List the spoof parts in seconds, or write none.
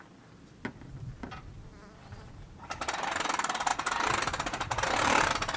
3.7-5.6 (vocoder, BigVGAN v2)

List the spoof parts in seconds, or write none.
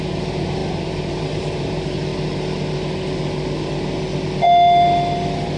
0.0-2.1 (vocoder, BigVGAN v2)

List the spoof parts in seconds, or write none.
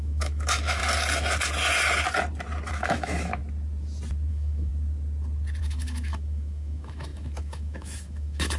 0.0-0.8 (autoencoder, DAC-VAE); 2.7-3.4; 4.3-4.7; 5.6-8.6